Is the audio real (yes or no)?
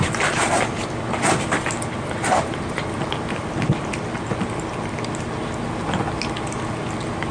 yes